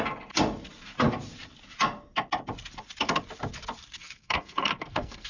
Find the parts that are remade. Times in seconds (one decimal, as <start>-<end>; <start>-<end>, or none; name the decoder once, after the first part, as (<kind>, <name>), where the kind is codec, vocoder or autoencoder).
4.0-5.3 (codec, SNAC)